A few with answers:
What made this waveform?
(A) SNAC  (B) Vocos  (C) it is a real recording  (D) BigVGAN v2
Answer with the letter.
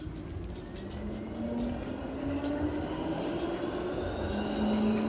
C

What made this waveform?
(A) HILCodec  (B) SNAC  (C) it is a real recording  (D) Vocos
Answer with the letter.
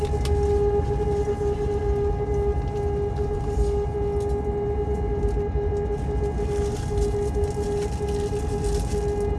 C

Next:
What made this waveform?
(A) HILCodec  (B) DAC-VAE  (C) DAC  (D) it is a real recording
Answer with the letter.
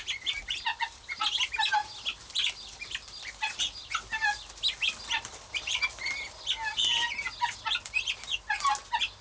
D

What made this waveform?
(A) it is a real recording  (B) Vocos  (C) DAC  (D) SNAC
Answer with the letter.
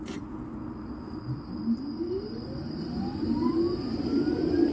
A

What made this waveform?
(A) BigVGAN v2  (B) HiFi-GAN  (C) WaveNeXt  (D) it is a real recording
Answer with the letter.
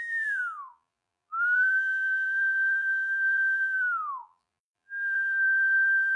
A